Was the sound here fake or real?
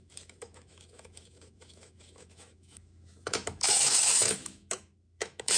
fake